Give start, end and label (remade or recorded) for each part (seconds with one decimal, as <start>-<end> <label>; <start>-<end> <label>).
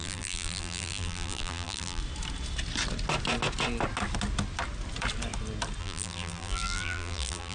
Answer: 0.0-2.0 remade; 2.0-5.8 recorded; 5.8-7.5 remade